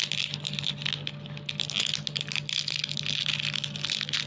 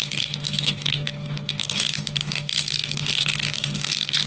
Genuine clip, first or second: first